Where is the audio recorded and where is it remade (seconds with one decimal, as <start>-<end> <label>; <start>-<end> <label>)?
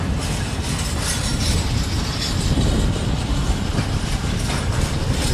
0.0-5.3 recorded